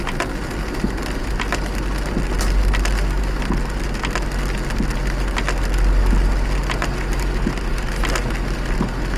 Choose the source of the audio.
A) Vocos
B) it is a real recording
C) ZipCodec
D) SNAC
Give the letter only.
B